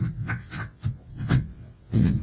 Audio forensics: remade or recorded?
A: remade